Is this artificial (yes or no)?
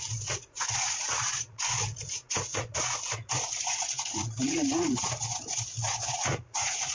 yes